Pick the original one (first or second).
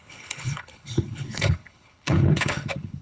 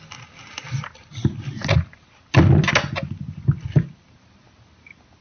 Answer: second